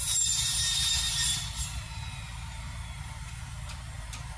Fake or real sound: fake